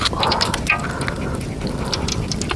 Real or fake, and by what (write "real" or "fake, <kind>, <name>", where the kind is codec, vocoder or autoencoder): real